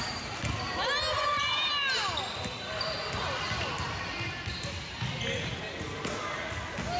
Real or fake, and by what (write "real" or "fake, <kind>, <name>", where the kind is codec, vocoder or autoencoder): real